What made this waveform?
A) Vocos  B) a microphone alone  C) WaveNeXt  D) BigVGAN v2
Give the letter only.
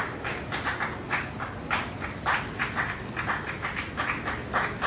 B